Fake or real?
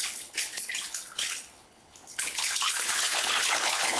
fake